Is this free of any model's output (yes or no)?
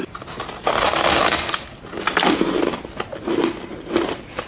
yes